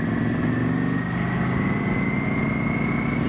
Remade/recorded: recorded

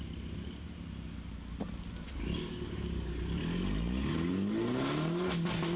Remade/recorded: recorded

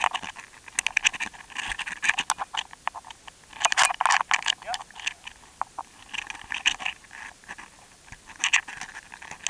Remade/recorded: recorded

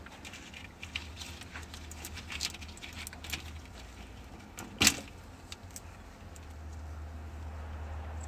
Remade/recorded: recorded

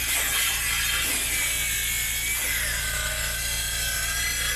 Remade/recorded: recorded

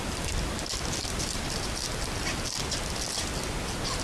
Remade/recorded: recorded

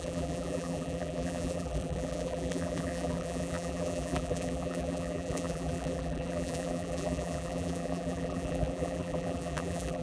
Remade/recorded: remade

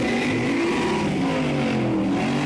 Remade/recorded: recorded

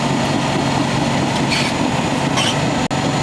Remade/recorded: recorded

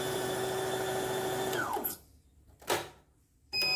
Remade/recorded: recorded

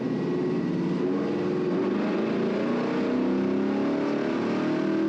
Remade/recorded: recorded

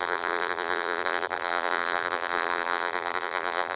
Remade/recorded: remade